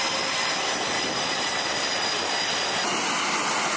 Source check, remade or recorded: recorded